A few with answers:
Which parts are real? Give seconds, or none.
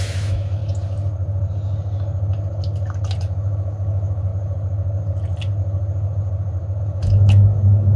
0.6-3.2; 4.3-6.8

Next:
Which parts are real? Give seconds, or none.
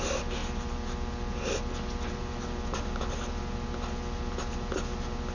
0.0-5.3